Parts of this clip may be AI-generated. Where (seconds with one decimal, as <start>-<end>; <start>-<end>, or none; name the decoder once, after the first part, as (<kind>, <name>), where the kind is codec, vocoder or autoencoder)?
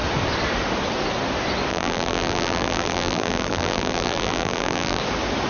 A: 1.7-5.0 (vocoder, BigVGAN v2)